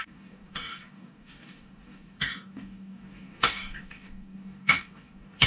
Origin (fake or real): fake